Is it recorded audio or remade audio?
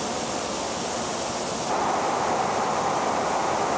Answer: recorded